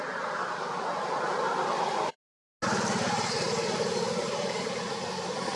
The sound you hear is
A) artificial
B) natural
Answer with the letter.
B